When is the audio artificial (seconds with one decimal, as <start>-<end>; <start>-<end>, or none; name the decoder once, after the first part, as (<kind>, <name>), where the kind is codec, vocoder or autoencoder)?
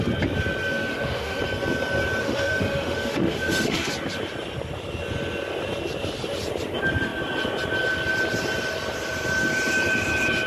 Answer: 0.9-1.4 (autoencoder, DAC-VAE); 2.2-3.9